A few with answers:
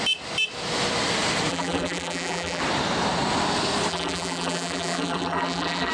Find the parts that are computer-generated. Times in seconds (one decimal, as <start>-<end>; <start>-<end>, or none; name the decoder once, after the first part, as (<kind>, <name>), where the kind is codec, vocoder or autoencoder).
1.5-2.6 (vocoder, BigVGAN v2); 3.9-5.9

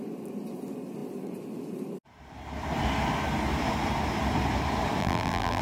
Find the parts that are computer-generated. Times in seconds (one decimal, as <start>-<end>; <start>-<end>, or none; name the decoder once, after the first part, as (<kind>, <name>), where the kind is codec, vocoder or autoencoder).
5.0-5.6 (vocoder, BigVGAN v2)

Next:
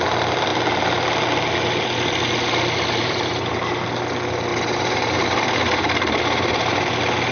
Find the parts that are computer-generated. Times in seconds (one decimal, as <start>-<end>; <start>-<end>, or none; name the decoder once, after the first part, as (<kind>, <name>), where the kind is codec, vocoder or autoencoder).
3.0-3.8 (vocoder, BigVGAN v2); 4.5-6.7

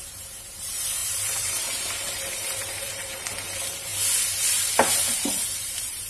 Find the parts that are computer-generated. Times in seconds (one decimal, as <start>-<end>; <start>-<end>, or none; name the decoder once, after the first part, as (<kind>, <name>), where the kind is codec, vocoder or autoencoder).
0.0-3.9 (vocoder, BigVGAN v2); 4.5-6.1